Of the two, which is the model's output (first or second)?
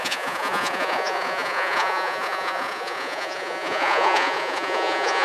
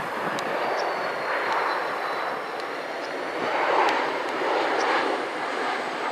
first